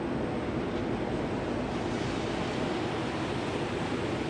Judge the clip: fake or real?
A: real